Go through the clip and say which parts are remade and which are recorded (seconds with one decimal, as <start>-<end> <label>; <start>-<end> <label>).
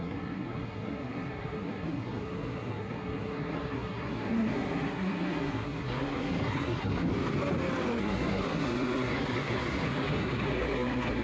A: 0.0-7.1 remade; 7.1-8.0 recorded; 8.0-11.2 remade